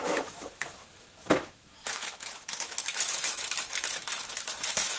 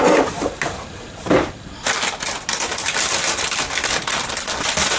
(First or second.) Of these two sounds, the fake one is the first